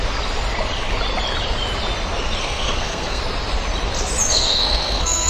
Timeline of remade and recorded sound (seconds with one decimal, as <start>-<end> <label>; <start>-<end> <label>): 0.0-2.4 recorded; 2.4-3.2 remade; 3.2-4.3 recorded; 4.3-5.3 remade